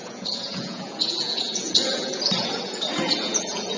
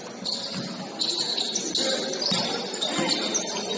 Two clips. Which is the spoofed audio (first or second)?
first